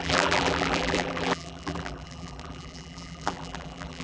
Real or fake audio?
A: fake